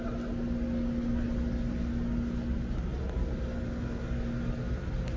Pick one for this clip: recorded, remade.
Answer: recorded